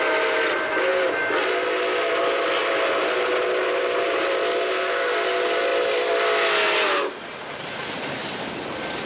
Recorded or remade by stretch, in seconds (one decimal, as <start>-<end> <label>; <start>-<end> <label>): 0.0-9.1 recorded